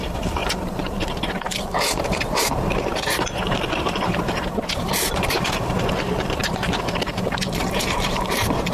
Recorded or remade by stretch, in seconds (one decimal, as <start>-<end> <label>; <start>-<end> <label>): 0.0-6.4 remade; 6.4-7.0 recorded; 7.0-8.7 remade